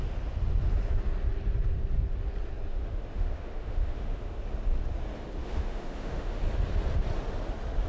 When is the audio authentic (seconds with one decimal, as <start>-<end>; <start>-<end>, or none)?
0.0-2.7; 4.4-5.4; 6.4-7.9